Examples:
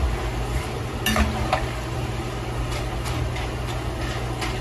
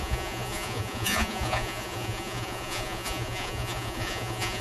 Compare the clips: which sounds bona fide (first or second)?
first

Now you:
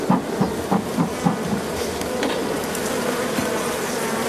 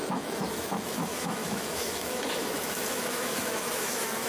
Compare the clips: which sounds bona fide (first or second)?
first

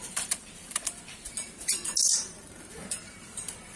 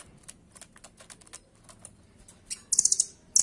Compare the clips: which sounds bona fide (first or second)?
second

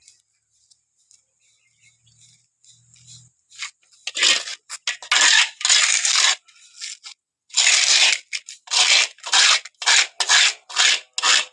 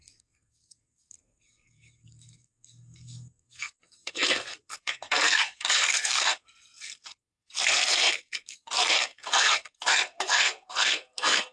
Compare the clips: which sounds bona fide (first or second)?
first